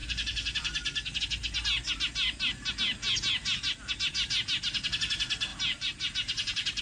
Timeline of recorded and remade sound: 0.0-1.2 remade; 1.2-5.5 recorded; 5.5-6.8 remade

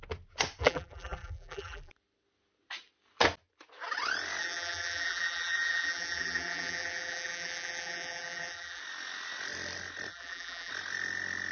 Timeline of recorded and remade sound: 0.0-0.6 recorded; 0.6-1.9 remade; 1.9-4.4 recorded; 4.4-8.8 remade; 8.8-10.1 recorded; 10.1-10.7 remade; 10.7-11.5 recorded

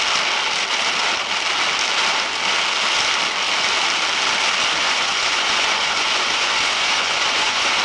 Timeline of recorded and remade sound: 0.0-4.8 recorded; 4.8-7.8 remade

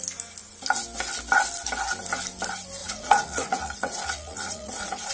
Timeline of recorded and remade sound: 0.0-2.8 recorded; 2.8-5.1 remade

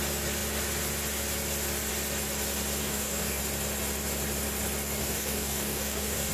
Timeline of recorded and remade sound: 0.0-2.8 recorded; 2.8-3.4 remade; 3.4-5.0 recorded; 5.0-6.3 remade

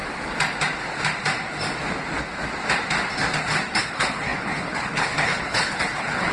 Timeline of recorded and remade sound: 0.0-3.8 recorded; 3.8-6.3 remade

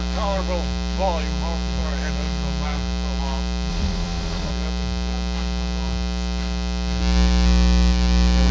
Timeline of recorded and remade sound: 0.0-3.7 recorded; 3.7-4.5 remade; 4.5-8.5 recorded